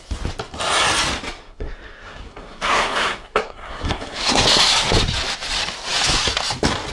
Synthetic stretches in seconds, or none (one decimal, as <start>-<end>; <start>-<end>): 1.4-4.4

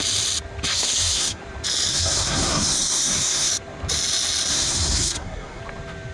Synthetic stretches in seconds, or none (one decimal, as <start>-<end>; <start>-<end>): 0.7-1.4; 1.9-3.5; 4.5-5.6

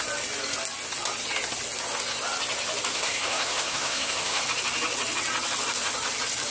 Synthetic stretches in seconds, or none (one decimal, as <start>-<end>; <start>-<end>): 2.9-4.4

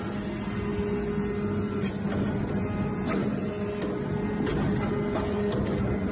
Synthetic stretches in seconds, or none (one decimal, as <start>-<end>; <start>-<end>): none

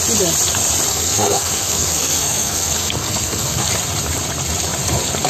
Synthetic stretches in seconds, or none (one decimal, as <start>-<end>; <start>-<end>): 0.9-3.7